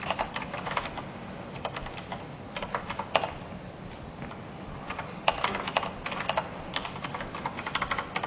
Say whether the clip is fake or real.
real